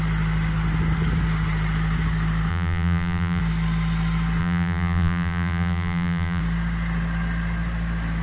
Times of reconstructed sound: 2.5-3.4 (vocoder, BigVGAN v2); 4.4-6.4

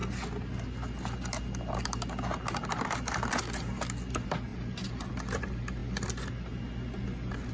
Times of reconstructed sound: none